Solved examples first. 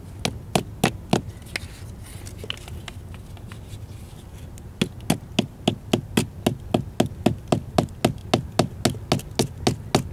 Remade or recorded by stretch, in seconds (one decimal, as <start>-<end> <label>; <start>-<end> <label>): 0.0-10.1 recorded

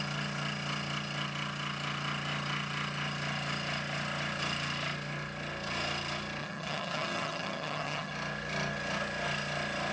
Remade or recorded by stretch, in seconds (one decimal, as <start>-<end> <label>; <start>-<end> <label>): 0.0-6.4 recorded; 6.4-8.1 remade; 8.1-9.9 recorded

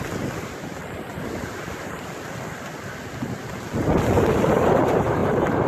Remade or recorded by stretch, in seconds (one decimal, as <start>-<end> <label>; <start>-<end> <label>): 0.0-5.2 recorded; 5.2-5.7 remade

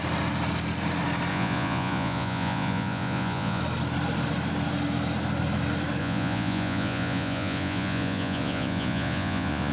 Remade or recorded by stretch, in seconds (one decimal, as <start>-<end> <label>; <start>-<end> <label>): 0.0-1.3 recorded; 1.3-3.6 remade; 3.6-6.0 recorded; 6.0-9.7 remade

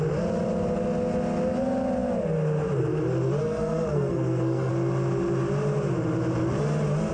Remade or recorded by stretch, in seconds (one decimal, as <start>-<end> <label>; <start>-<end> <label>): 0.0-3.4 recorded; 3.4-4.7 remade; 4.7-7.1 recorded